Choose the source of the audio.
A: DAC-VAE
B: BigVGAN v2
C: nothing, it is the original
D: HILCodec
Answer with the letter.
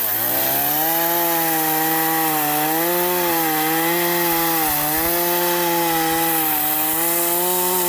C